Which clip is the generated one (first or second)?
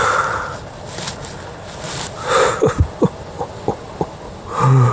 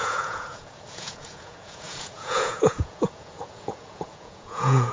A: second